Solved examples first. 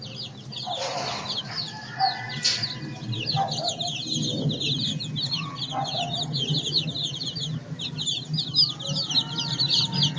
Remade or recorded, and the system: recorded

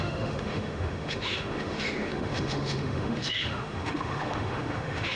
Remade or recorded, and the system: remade, autoencoder, DAC-VAE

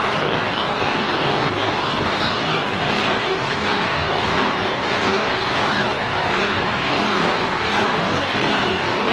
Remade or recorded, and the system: remade, codec, DAC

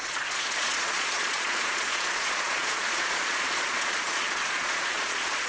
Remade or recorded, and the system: remade, vocoder, Vocos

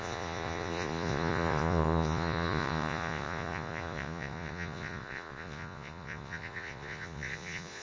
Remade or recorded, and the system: remade, vocoder, Vocos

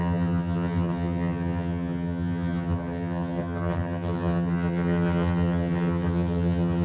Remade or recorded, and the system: remade, vocoder, HiFi-GAN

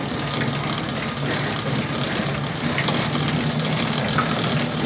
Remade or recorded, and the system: recorded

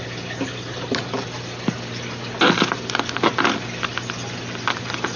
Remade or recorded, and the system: recorded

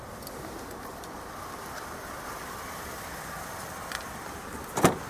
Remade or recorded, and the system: remade, vocoder, BigVGAN v2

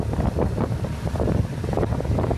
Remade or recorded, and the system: recorded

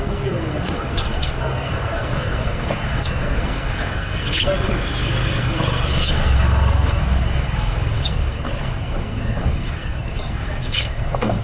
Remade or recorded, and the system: remade, codec, SNAC